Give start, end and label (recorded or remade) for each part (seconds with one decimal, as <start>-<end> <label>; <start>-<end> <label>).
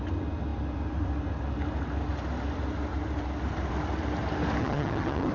0.0-4.6 recorded; 4.6-5.3 remade